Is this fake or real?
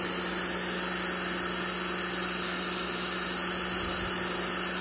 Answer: real